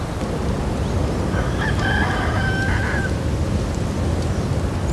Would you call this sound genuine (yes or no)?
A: yes